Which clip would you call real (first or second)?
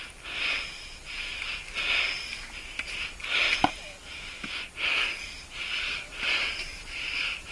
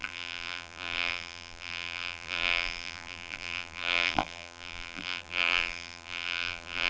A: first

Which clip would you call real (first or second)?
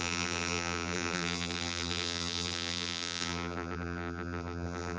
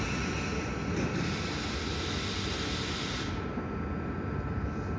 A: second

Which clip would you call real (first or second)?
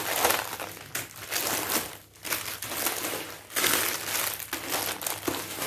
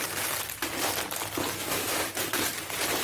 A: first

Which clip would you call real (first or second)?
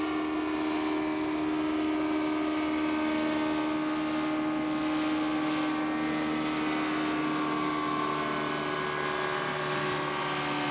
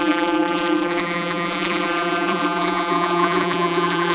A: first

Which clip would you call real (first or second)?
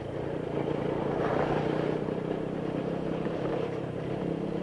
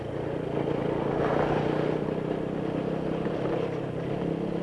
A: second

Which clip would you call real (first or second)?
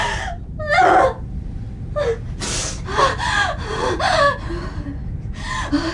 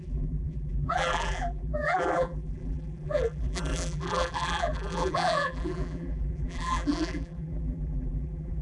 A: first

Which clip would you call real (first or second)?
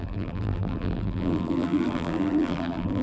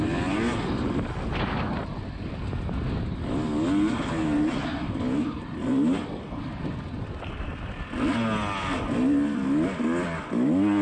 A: second